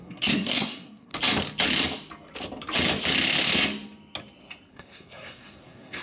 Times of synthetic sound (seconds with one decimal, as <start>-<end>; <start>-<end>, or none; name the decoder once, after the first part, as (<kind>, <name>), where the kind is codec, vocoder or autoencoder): 0.0-1.1 (codec, SNAC); 4.7-6.0